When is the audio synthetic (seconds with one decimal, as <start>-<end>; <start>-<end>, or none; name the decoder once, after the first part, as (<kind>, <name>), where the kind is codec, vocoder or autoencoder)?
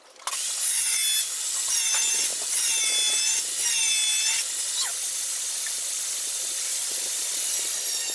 none